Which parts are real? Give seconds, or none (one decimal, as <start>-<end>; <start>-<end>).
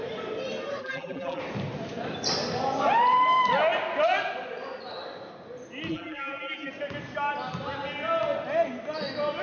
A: 0.0-0.8; 1.4-5.9; 6.7-9.4